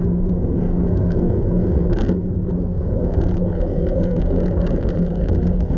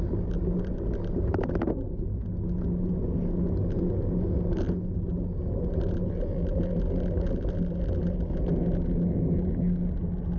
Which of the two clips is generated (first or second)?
first